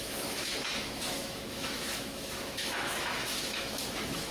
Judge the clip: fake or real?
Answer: fake